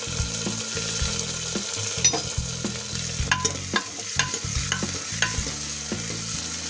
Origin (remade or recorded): recorded